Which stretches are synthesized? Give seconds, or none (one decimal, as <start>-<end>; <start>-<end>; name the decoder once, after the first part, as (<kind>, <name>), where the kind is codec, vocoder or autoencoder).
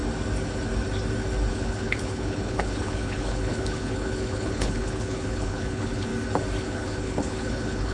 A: 1.5-6.1 (codec, HILCodec); 6.6-7.9